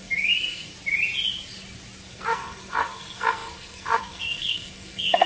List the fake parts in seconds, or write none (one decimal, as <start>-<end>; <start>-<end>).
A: 0.0-0.7; 2.1-5.3